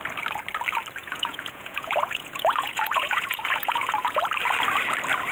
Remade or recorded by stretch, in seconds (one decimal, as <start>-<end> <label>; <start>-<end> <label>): 0.0-1.0 recorded; 1.0-4.2 remade; 4.2-5.3 recorded